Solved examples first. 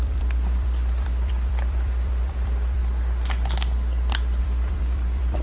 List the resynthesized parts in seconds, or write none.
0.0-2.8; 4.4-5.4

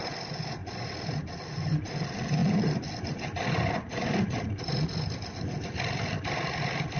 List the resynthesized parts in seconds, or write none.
none

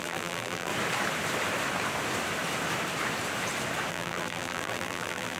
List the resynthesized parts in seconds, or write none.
0.0-0.7; 3.9-5.4

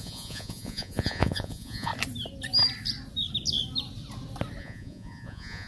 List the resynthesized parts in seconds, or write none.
0.0-1.9; 4.6-5.7

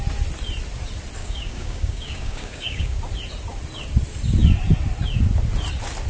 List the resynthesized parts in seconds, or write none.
1.2-3.0

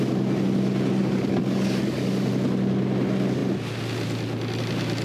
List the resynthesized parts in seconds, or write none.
1.0-2.3

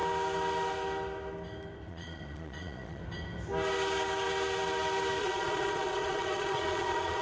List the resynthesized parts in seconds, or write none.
1.9-3.0; 5.2-7.2